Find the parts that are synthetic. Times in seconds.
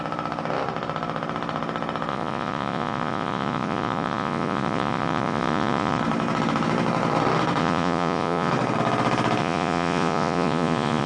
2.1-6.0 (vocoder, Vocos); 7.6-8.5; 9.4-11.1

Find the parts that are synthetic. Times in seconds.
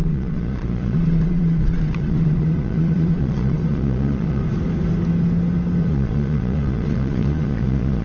0.0-4.4 (vocoder, Vocos); 5.8-8.0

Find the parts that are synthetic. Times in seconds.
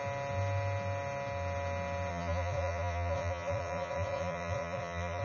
2.1-5.2 (vocoder, Vocos)